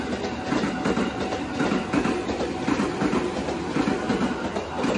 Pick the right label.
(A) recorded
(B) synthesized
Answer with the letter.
A